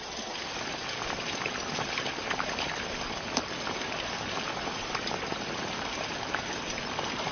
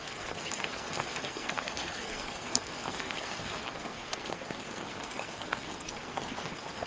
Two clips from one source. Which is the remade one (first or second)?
second